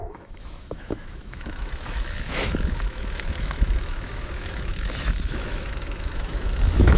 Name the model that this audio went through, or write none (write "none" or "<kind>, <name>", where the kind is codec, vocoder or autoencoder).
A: autoencoder, DAC-VAE